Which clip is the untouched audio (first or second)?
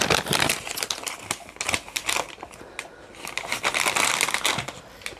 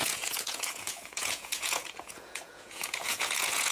first